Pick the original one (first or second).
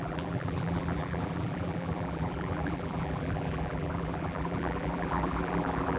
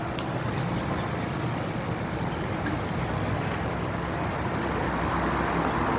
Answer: second